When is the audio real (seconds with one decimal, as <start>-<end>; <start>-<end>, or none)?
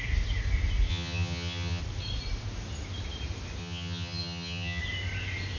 0.0-0.9; 1.8-3.6; 4.8-5.6